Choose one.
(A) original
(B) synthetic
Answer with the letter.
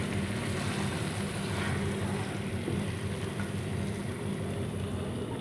A